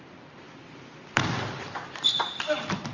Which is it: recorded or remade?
recorded